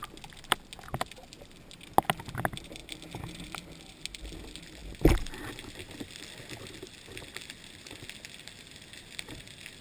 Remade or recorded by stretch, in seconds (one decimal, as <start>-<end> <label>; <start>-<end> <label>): 0.0-9.8 recorded